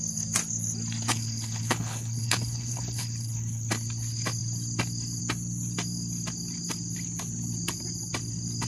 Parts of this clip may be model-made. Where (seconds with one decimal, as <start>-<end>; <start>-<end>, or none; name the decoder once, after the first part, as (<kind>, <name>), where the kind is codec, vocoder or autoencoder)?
1.1-3.7 (codec, HILCodec)

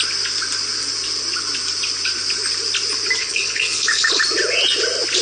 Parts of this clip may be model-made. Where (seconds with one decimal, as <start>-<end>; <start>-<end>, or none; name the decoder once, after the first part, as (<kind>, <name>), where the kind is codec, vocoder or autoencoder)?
3.2-4.2 (codec, HILCodec)

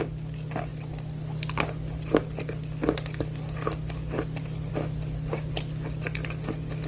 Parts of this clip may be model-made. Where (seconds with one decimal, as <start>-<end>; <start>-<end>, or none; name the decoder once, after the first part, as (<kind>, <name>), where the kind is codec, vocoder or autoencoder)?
none